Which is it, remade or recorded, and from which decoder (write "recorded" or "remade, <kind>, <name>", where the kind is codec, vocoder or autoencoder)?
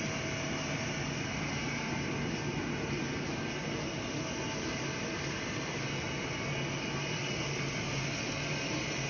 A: recorded